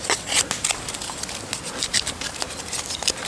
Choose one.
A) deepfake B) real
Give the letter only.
B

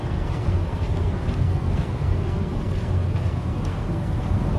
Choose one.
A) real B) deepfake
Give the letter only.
B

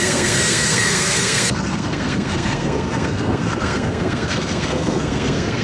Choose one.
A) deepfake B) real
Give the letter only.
A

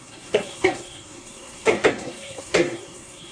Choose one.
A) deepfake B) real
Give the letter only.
A